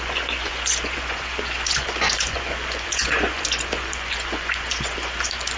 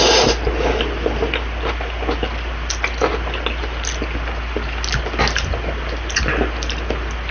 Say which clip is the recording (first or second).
second